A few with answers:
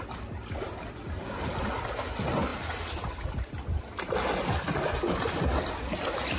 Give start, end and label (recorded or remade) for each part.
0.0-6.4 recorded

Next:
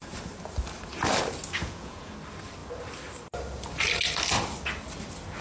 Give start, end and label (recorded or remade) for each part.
0.0-1.6 recorded; 1.6-2.1 remade; 2.1-5.4 recorded

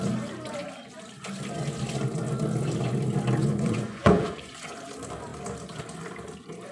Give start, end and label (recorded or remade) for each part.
0.0-3.4 recorded; 3.4-4.7 remade; 4.7-6.7 recorded